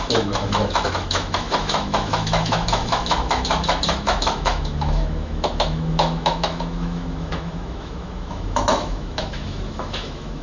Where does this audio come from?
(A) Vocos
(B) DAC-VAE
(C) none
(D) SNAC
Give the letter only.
B